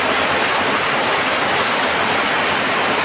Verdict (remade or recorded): recorded